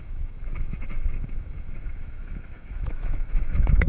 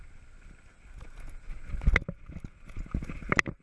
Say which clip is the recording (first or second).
second